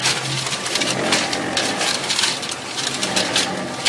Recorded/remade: recorded